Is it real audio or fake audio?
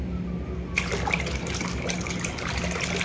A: real